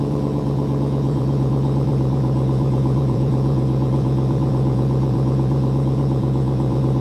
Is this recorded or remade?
remade